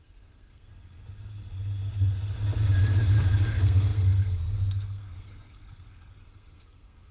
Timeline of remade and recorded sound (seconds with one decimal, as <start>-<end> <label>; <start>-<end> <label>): 0.0-0.7 remade; 0.7-3.5 recorded; 3.5-7.1 remade

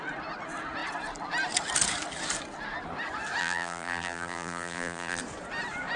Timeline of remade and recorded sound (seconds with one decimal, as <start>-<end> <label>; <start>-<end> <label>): 0.0-3.4 recorded; 3.4-5.2 remade; 5.2-6.0 recorded

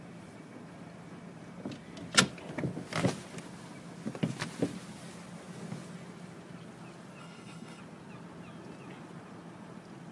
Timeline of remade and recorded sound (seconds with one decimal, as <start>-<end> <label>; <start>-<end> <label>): 0.0-7.2 recorded; 7.2-7.8 remade; 7.8-10.1 recorded

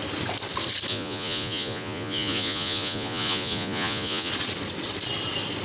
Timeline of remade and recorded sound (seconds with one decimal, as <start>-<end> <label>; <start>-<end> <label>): 0.0-0.9 recorded; 0.9-4.3 remade; 4.3-5.6 recorded

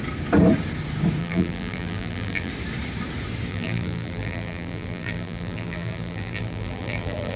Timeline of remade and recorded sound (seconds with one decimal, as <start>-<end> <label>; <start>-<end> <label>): 0.0-1.2 recorded; 1.2-2.5 remade; 2.5-3.5 recorded; 3.5-7.4 remade

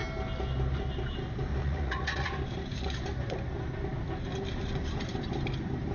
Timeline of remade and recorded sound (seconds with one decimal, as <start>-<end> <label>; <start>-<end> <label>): 0.0-1.6 recorded; 1.6-2.3 remade; 2.3-5.9 recorded

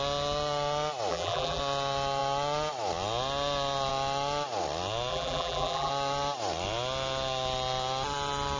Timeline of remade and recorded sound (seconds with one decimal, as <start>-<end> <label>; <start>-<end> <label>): 0.0-1.1 recorded; 1.1-1.6 remade; 1.6-5.1 recorded; 5.1-5.9 remade; 5.9-8.6 recorded

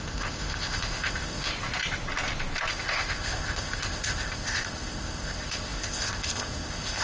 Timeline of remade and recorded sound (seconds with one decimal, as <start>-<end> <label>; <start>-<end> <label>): 0.0-1.5 remade; 1.5-2.7 recorded; 2.7-7.0 remade